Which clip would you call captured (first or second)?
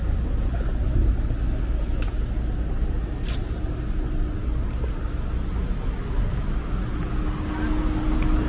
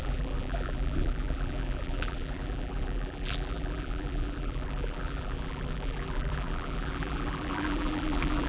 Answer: first